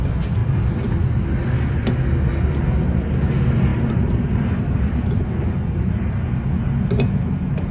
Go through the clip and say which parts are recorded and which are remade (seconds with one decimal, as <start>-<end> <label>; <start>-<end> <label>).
0.0-3.7 recorded; 3.7-4.9 remade; 4.9-7.7 recorded